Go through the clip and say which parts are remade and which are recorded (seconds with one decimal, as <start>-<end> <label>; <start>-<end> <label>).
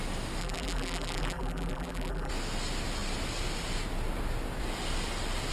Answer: 0.0-0.4 recorded; 0.4-2.3 remade; 2.3-5.5 recorded